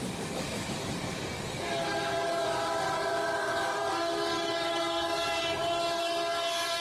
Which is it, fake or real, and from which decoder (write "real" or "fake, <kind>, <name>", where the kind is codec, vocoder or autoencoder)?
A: fake, codec, DAC